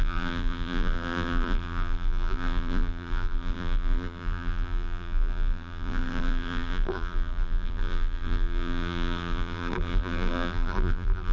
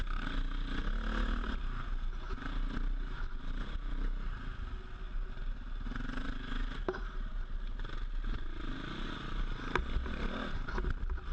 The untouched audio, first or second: second